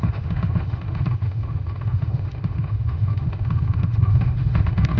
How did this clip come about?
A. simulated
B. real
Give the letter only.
A